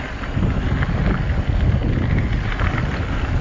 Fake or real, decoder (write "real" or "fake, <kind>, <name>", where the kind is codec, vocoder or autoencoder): real